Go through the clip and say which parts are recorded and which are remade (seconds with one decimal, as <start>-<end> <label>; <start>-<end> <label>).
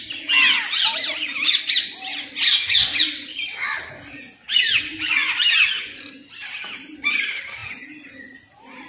0.0-8.9 recorded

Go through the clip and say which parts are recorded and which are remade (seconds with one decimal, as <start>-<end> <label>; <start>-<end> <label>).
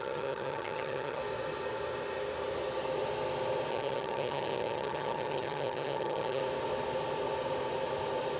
0.0-1.2 remade; 1.2-3.7 recorded; 3.7-6.4 remade; 6.4-8.4 recorded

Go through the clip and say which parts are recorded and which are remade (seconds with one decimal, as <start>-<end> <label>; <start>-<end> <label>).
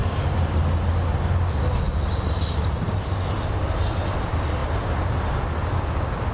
0.0-6.3 recorded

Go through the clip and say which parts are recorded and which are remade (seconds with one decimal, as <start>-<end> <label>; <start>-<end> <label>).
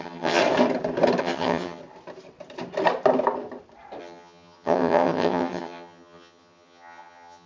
0.0-0.4 remade; 0.4-1.2 recorded; 1.2-1.8 remade; 1.8-4.0 recorded; 4.0-7.5 remade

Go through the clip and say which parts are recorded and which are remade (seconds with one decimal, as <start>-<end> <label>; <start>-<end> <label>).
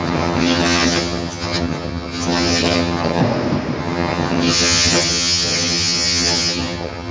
0.0-3.2 remade; 3.2-3.8 recorded; 3.8-7.1 remade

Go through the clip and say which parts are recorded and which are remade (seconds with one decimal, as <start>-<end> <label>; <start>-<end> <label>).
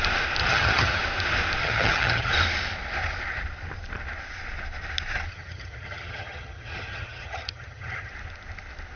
0.0-0.4 recorded; 0.4-1.0 remade; 1.0-1.6 recorded; 1.6-2.3 remade; 2.3-5.3 recorded; 5.3-8.1 remade; 8.1-9.0 recorded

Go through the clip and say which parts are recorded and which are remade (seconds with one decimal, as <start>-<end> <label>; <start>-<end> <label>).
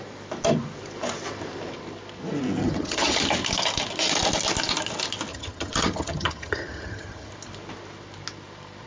0.0-2.6 recorded; 2.6-3.2 remade; 3.2-5.3 recorded; 5.3-7.3 remade; 7.3-8.9 recorded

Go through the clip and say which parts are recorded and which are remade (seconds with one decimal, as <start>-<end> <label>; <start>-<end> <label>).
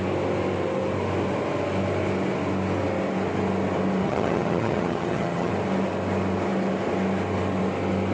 0.0-4.0 recorded; 4.0-5.5 remade; 5.5-8.1 recorded